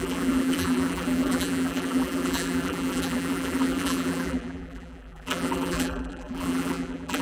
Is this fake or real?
fake